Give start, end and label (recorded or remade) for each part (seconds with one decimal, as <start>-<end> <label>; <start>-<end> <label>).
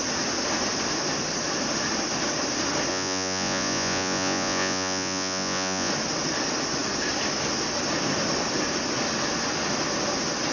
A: 0.0-2.9 recorded; 2.9-5.9 remade; 5.9-10.5 recorded